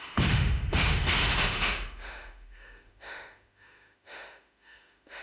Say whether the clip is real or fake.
fake